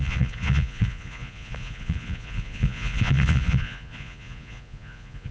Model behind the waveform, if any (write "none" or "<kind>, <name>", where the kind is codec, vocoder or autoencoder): vocoder, Vocos